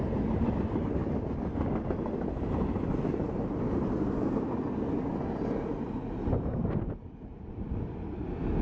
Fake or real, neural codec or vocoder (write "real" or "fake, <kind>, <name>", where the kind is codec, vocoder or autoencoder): real